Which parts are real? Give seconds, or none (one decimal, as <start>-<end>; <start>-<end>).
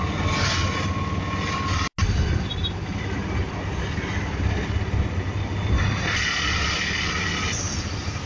0.0-8.3